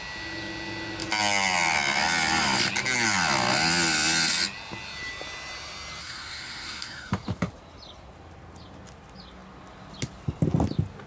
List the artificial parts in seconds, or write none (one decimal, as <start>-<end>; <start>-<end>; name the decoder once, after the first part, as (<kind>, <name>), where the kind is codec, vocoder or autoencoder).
6.0-7.1 (codec, SNAC)